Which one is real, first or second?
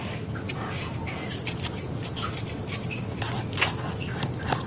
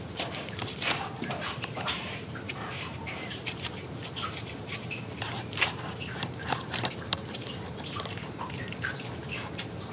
first